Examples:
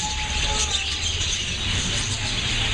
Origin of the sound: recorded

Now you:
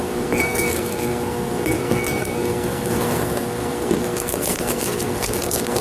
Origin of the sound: remade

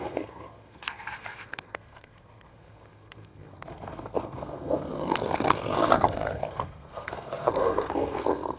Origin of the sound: remade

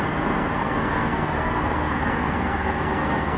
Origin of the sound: remade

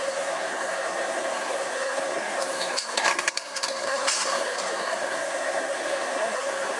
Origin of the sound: remade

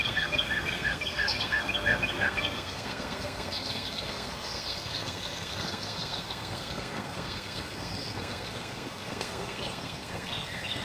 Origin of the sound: remade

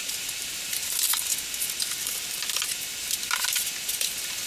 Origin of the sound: recorded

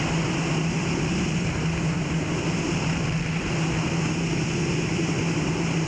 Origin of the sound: recorded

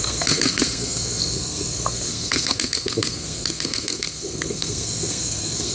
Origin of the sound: remade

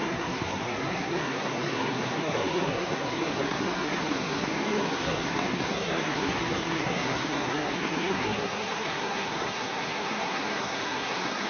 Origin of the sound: remade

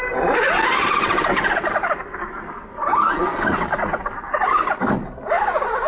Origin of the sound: recorded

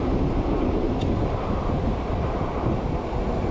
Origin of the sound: recorded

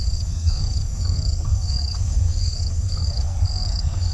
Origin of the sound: remade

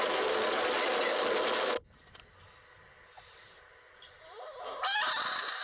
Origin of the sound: recorded